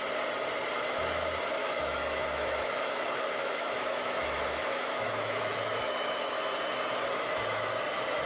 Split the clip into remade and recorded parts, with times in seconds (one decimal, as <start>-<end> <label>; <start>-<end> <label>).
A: 0.0-1.6 recorded; 1.6-6.4 remade; 6.4-8.3 recorded